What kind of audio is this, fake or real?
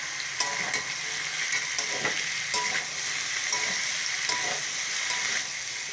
real